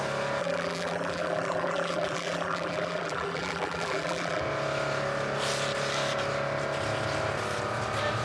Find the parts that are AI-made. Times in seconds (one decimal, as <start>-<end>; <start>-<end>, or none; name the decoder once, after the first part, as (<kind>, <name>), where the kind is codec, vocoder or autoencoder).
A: 0.4-4.4 (vocoder, BigVGAN v2)